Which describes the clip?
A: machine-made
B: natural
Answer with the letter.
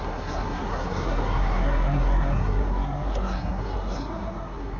A